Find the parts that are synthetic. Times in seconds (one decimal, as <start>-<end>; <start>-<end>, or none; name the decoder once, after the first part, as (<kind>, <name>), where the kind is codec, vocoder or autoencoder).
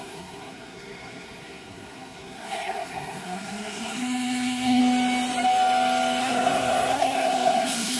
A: 0.0-4.8 (codec, SNAC); 6.2-8.0